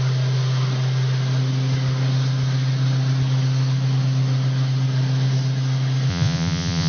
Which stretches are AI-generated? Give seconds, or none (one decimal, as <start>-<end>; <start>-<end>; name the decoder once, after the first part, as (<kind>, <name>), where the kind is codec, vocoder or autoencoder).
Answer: 6.1-6.9 (vocoder, Vocos)